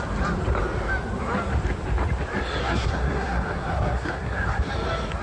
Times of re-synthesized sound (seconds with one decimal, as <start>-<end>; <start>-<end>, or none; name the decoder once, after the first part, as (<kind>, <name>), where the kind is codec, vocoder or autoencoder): 2.6-4.7 (codec, SNAC)